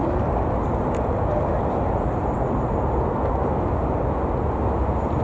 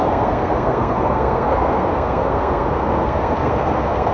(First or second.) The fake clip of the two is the second